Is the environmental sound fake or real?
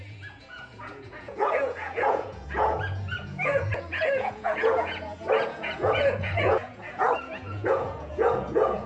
fake